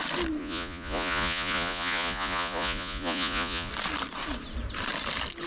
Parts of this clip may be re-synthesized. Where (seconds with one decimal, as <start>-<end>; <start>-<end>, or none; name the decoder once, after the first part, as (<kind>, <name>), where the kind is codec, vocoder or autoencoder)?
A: 0.4-3.7 (vocoder, Vocos)